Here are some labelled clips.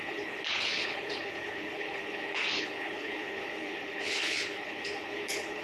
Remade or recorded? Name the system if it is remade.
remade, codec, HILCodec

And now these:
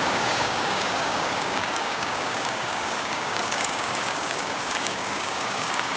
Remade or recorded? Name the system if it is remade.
remade, codec, DAC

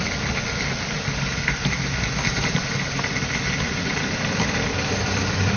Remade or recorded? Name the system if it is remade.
recorded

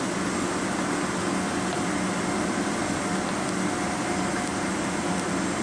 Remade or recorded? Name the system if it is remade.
recorded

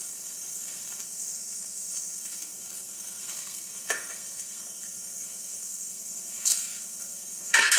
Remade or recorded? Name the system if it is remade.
remade, codec, SNAC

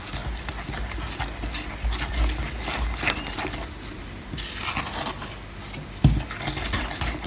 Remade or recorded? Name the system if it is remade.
recorded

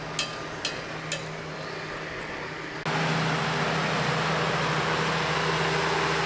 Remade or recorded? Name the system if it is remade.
recorded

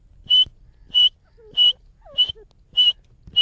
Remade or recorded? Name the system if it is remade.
recorded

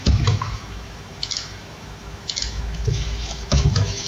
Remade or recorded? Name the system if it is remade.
remade, autoencoder, DAC-VAE